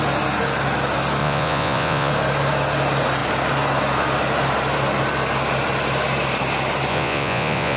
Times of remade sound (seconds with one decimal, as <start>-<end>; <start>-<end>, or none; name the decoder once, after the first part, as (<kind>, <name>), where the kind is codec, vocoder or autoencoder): 1.2-2.1 (vocoder, Vocos); 6.9-7.8